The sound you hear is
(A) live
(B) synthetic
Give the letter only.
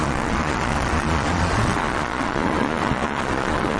B